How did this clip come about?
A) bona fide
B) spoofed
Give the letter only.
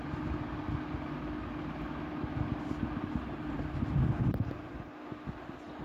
A